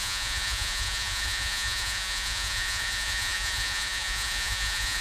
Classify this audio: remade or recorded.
remade